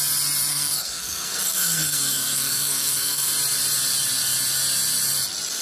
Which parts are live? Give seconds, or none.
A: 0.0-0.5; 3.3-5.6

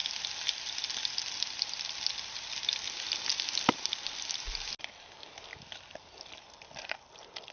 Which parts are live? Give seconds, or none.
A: 0.0-7.5